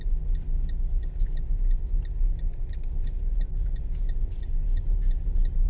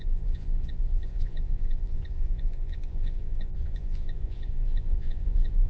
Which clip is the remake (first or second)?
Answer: second